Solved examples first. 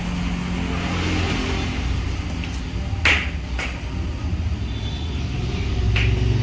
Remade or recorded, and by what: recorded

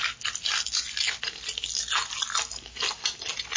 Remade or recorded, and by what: recorded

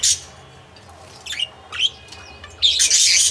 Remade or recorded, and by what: recorded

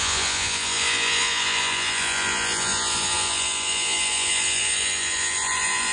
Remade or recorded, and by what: remade, vocoder, Vocos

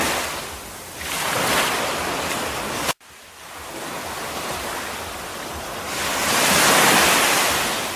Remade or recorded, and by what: recorded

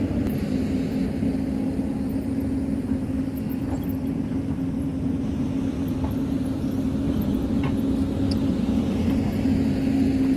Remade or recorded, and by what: recorded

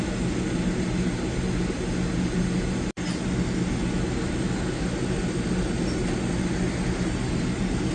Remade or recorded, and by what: recorded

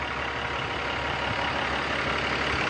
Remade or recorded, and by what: recorded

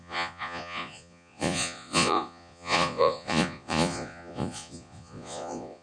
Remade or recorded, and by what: remade, vocoder, Vocos